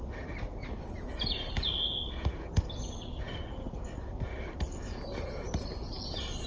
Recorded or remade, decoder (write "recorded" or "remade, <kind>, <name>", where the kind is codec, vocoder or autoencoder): recorded